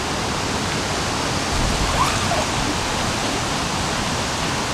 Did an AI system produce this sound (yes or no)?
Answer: no